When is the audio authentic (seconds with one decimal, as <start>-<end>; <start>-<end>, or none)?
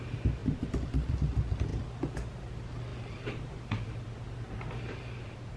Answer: 0.0-5.6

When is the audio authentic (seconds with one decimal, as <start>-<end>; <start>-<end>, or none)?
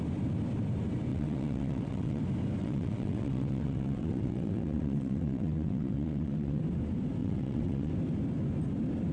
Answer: 0.0-1.1; 2.2-2.6; 6.6-7.2; 7.9-9.1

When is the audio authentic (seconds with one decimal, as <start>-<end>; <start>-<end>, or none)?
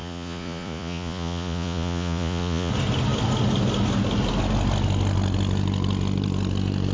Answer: 2.7-6.9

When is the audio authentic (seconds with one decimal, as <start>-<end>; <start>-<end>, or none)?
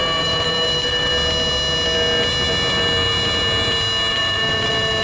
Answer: 1.1-4.1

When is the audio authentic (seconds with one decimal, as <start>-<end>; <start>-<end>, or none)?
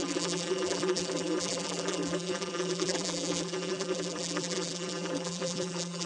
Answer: none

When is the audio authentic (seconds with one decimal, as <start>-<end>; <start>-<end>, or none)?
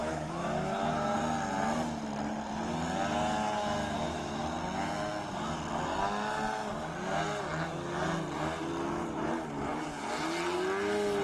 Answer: 1.2-3.6; 4.4-11.2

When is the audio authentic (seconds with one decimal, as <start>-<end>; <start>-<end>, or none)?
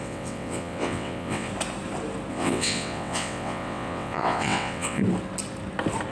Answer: 1.5-2.3; 5.0-6.1